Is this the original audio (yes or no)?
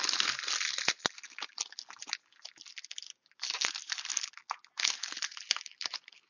yes